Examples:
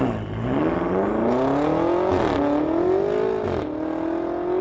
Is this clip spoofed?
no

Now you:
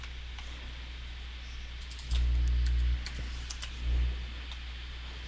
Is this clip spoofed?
no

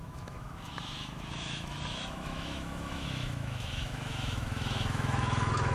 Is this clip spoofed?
yes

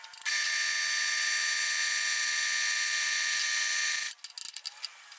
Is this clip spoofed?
no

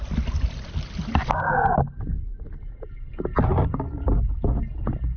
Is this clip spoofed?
no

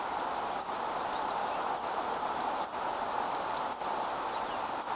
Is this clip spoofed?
no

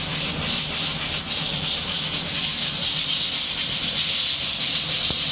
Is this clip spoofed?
no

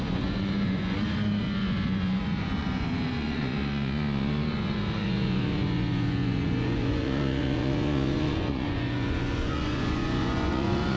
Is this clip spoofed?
yes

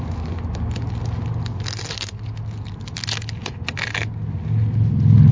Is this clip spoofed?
no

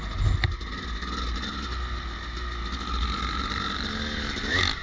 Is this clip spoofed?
no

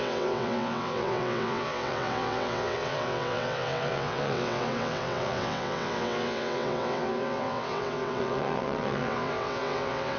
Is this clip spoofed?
yes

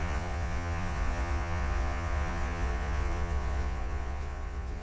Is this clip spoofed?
yes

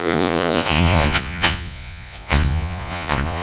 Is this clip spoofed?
yes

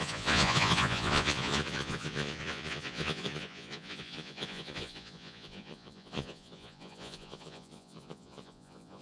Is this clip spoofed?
yes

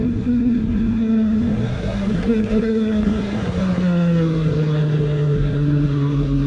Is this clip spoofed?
yes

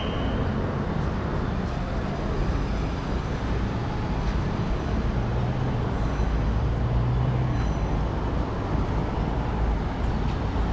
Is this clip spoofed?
no